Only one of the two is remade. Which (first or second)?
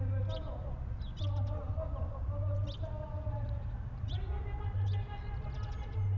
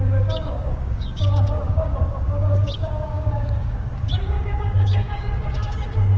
second